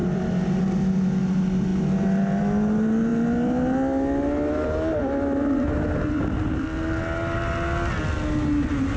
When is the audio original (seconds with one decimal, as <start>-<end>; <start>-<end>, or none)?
0.0-9.0